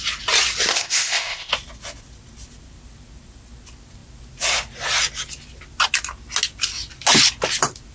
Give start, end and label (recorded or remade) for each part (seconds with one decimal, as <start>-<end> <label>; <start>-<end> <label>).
0.0-0.7 recorded; 0.7-1.5 remade; 1.5-7.9 recorded